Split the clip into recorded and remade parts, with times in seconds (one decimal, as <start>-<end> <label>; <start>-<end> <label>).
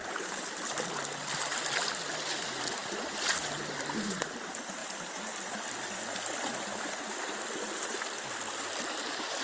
0.0-9.4 recorded